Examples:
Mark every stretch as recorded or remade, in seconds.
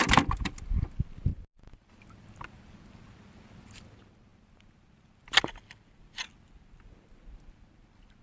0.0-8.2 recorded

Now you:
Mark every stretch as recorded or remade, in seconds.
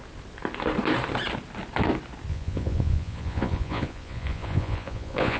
0.0-2.3 recorded; 2.3-5.4 remade